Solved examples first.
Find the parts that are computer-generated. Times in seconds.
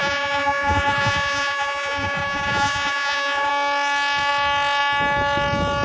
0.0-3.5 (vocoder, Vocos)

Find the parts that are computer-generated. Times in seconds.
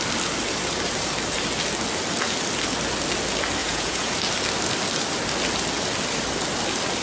3.6-4.1 (vocoder, Vocos)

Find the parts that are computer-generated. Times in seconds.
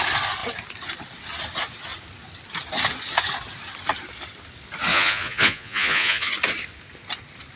4.9-6.3 (vocoder, Vocos)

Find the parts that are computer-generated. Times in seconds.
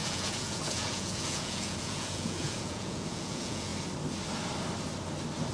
0.0-3.7 (vocoder, Vocos)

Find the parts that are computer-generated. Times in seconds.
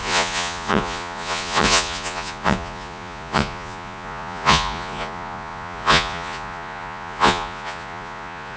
0.0-8.6 (vocoder, Vocos)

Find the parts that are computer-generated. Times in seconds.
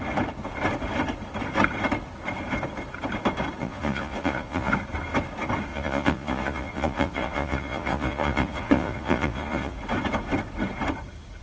3.6-4.7 (vocoder, Vocos); 5.7-9.8